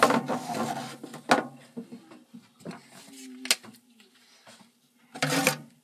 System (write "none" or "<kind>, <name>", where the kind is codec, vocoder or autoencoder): none